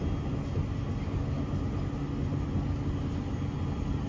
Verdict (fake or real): real